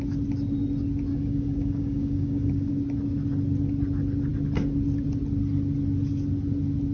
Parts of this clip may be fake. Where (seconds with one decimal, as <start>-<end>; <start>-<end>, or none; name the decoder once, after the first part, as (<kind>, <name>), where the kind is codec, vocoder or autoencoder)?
1.1-2.7 (codec, DAC)